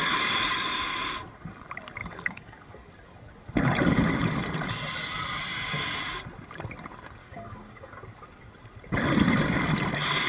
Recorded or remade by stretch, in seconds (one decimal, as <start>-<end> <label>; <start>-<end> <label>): 0.0-2.0 recorded; 2.0-2.7 remade; 2.7-7.2 recorded; 7.2-7.9 remade; 7.9-10.3 recorded